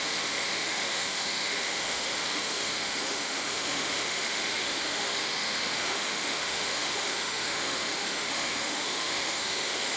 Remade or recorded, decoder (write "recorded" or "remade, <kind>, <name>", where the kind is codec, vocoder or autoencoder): remade, autoencoder, DAC-VAE